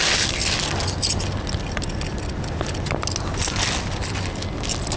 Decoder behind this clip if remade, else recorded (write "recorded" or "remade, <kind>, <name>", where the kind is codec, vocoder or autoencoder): recorded